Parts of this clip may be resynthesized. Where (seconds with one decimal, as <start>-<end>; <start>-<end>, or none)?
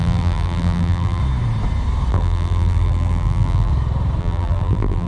0.0-1.2; 2.1-3.7; 4.2-5.1